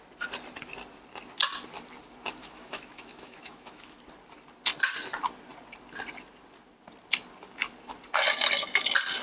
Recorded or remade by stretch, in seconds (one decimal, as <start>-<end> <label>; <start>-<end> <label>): 0.0-2.4 recorded; 2.4-4.0 remade; 4.0-9.2 recorded